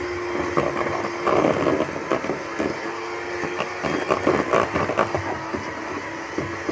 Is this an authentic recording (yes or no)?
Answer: no